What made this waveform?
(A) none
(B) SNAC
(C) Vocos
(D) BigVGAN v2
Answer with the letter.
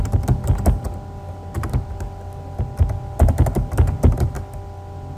A